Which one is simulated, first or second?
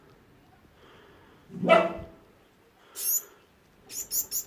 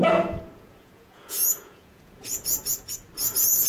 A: second